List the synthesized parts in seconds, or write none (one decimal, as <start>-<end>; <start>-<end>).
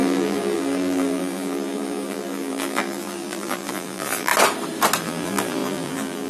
0.0-4.3; 5.0-6.3